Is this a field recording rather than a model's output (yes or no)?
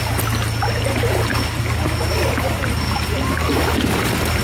yes